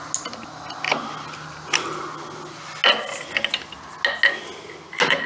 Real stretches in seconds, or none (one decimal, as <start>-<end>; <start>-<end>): 0.0-5.3